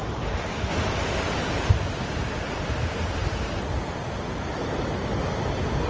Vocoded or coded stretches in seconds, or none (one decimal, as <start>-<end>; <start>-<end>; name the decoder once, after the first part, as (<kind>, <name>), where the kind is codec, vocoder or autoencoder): none